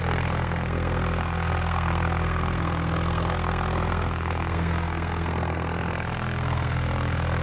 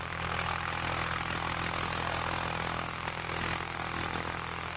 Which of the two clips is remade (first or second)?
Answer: first